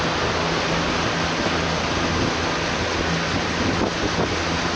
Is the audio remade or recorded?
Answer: recorded